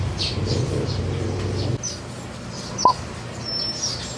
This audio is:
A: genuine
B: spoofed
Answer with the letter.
A